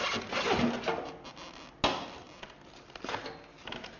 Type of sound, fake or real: real